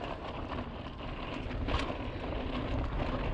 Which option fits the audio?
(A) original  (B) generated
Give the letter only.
A